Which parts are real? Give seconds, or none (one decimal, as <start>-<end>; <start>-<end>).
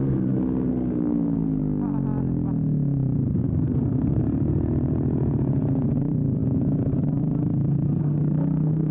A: 0.0-0.7; 1.6-3.5; 4.2-8.0